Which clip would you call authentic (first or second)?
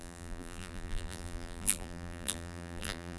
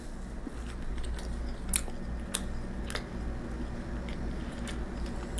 second